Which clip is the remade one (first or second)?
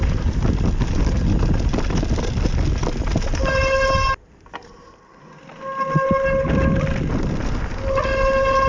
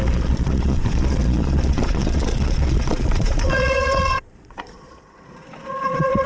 second